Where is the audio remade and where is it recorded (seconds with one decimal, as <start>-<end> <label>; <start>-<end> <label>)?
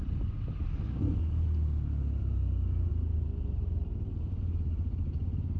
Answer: 0.0-0.7 recorded; 0.7-1.3 remade; 1.3-5.6 recorded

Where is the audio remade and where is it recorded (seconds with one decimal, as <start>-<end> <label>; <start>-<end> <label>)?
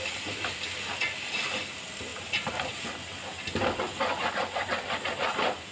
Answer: 0.0-5.7 recorded